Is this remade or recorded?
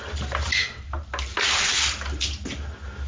recorded